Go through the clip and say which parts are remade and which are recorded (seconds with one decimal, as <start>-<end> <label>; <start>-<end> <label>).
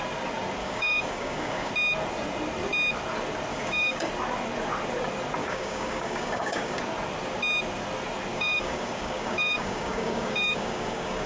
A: 0.0-0.6 recorded; 0.6-1.7 remade; 1.7-3.5 recorded; 3.5-4.1 remade; 4.1-5.4 recorded; 5.4-6.8 remade; 6.8-8.3 recorded; 8.3-11.3 remade